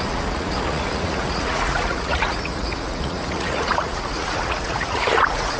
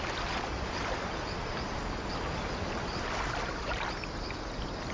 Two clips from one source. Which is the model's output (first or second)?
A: first